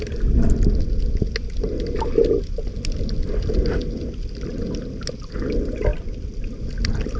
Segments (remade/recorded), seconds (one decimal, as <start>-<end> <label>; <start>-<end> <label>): 0.0-4.5 recorded; 4.5-5.2 remade; 5.2-5.9 recorded; 5.9-6.6 remade; 6.6-7.2 recorded